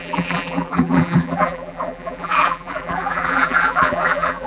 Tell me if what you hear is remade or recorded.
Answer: remade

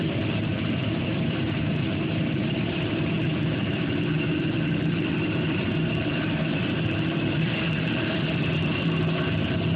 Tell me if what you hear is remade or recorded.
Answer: remade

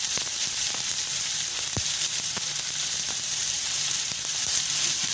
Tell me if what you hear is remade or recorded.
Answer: remade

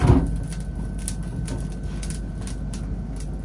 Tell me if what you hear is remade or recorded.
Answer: recorded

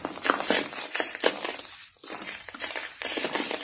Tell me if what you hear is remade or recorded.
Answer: remade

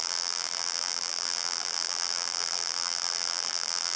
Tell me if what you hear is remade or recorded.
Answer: remade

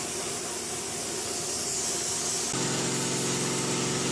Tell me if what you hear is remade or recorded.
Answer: recorded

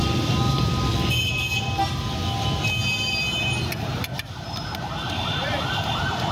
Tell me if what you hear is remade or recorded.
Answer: recorded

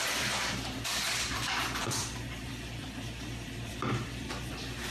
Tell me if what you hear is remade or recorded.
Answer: remade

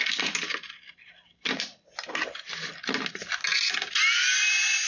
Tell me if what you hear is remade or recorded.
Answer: recorded